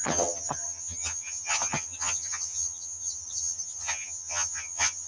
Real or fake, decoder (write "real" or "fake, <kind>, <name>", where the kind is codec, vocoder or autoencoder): fake, vocoder, HiFi-GAN